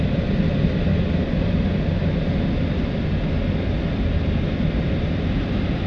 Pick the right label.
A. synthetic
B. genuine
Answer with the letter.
B